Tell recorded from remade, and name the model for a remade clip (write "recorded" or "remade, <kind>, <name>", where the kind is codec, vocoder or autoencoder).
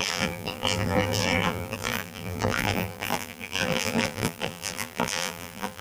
remade, vocoder, BigVGAN v2